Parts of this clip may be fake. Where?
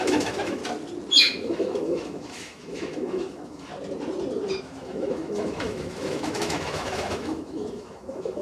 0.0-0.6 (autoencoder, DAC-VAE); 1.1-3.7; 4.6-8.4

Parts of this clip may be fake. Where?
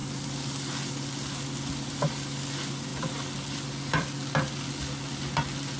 none